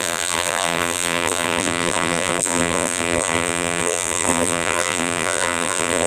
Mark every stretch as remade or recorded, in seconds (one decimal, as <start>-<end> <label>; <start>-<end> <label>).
0.0-6.1 remade